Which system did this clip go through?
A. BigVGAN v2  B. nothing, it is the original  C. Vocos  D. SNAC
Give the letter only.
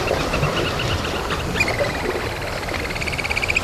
B